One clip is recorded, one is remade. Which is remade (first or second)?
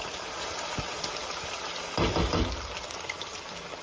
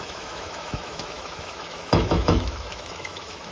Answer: second